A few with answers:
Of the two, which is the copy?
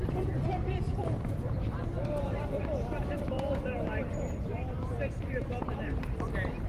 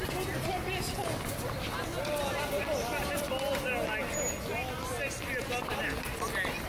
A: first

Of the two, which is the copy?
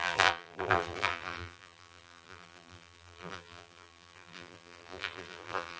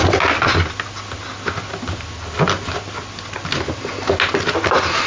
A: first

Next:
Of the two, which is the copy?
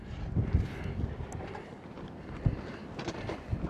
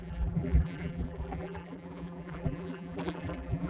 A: second